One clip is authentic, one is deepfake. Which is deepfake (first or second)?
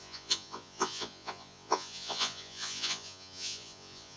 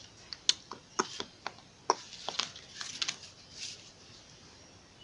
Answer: first